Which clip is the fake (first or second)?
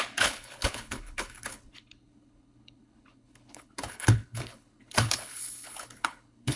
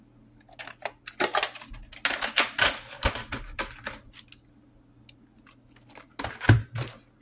first